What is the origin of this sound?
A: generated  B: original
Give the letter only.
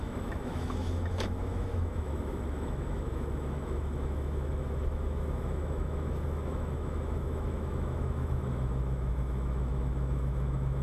A